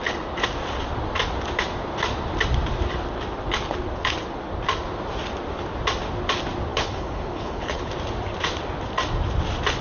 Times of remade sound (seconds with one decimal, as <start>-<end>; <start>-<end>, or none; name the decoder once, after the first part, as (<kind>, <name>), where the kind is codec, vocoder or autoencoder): 6.7-7.9 (codec, HILCodec)

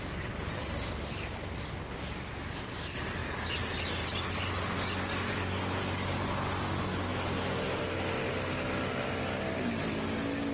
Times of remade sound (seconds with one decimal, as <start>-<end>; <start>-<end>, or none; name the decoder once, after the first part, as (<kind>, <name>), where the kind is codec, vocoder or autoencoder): none

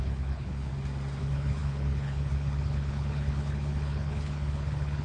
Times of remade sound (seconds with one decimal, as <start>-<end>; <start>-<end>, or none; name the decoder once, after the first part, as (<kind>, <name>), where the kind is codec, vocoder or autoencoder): 0.0-0.7 (codec, HILCodec); 1.2-5.0